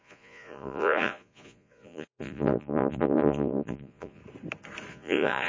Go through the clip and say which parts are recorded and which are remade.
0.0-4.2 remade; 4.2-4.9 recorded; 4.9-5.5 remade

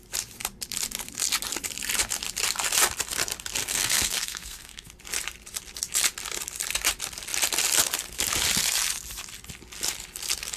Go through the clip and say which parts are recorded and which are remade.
0.0-3.6 recorded; 3.6-4.9 remade; 4.9-10.6 recorded

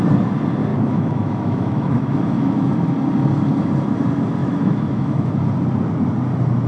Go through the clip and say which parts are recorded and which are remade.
0.0-0.7 recorded; 0.7-2.7 remade; 2.7-4.4 recorded; 4.4-5.3 remade; 5.3-6.7 recorded

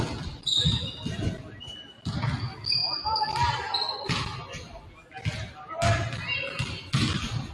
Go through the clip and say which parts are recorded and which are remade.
0.0-7.5 recorded

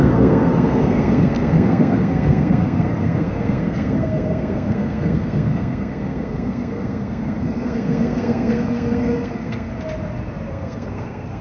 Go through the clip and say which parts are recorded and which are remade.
0.0-9.7 remade; 9.7-10.5 recorded; 10.5-11.4 remade

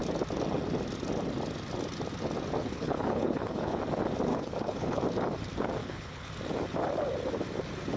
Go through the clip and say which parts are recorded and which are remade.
0.0-2.6 recorded; 2.6-3.8 remade; 3.8-4.3 recorded; 4.3-5.0 remade; 5.0-5.8 recorded; 5.8-6.3 remade; 6.3-8.0 recorded

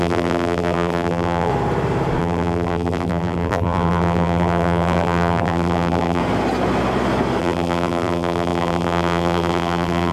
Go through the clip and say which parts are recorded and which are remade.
0.0-1.5 remade; 1.5-2.2 recorded; 2.2-6.2 remade; 6.2-7.4 recorded; 7.4-10.1 remade